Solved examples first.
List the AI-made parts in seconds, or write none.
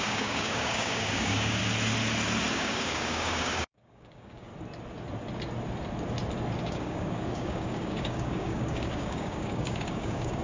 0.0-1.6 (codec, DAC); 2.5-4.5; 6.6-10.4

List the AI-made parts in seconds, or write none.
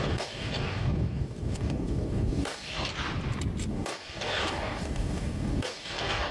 0.0-2.9 (codec, DAC); 3.7-6.3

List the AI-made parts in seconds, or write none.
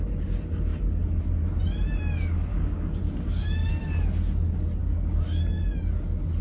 2.5-3.7 (codec, DAC); 4.8-5.4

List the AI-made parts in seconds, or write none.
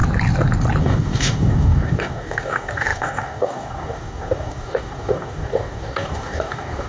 0.8-6.9 (codec, DAC)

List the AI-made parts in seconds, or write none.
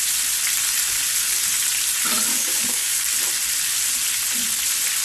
2.3-3.0 (codec, DAC)